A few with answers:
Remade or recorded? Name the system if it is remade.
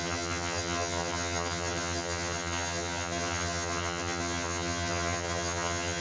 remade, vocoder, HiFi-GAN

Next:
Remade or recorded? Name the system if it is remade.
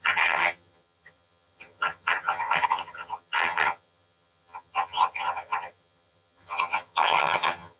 remade, vocoder, HiFi-GAN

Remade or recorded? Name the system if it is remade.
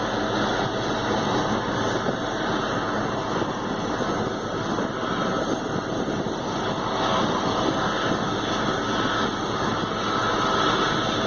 recorded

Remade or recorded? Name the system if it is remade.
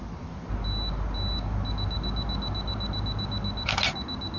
recorded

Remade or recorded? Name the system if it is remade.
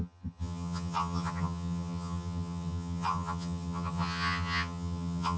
remade, vocoder, HiFi-GAN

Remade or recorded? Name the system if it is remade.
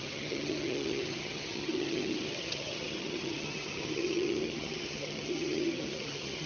remade, vocoder, HiFi-GAN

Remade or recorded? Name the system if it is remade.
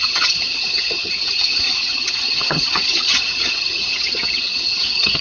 remade, vocoder, HiFi-GAN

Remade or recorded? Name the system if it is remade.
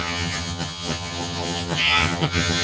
remade, vocoder, HiFi-GAN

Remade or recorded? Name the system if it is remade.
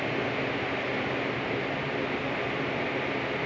recorded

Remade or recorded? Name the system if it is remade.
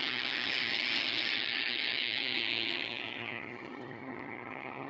remade, vocoder, HiFi-GAN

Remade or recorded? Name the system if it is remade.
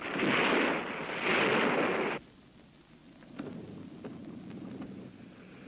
recorded